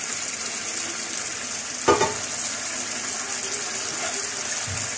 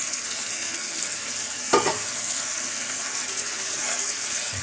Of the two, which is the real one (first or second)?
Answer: first